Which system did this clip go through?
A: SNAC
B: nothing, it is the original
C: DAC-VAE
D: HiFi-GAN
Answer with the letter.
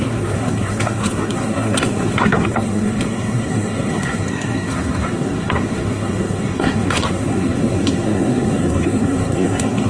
A